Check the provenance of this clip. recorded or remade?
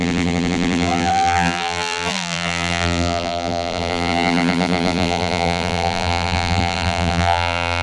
remade